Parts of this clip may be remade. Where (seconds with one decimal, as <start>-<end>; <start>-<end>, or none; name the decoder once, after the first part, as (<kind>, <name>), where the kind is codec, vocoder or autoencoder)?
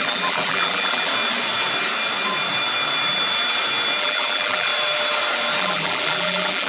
0.0-1.1 (vocoder, BigVGAN v2); 4.0-4.7; 5.6-6.7